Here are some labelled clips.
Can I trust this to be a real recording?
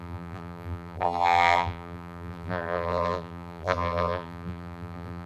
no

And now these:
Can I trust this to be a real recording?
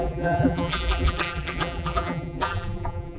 no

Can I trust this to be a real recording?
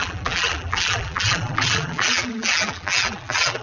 no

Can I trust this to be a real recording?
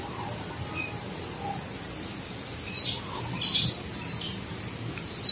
yes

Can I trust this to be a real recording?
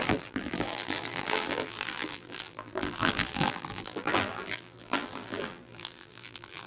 no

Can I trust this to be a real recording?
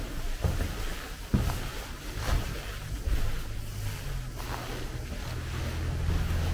yes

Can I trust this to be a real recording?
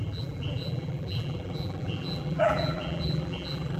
no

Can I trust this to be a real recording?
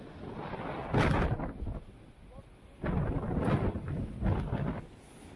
yes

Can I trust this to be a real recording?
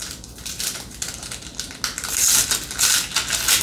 yes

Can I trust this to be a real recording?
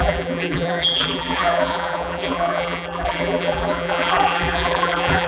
no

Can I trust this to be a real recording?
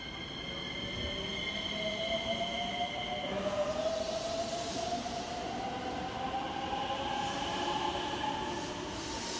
no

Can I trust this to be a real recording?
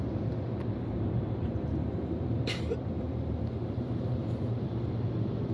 no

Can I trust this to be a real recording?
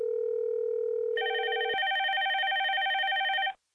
yes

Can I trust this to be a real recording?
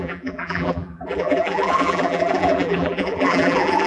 no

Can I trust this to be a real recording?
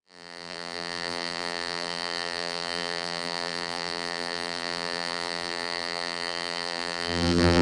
no